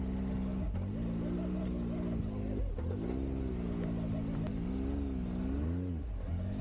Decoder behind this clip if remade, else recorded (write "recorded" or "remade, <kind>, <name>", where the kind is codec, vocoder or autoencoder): recorded